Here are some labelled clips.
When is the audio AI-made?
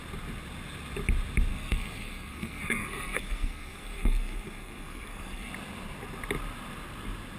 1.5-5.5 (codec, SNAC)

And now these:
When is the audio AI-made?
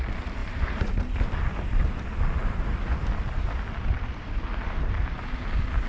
0.4-1.1 (vocoder, BigVGAN v2)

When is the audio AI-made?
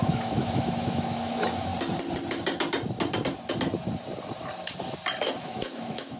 0.0-1.7 (autoencoder, DAC-VAE); 5.4-6.2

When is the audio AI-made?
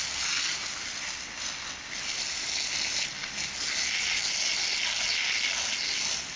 none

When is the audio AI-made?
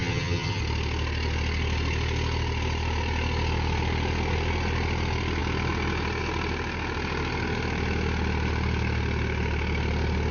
0.0-0.6 (vocoder, HiFi-GAN)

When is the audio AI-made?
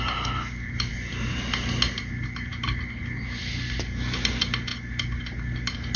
none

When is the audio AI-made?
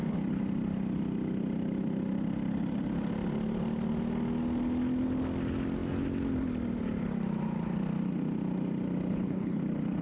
9.1-9.6 (codec, HILCodec)